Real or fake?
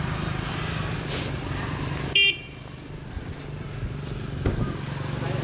real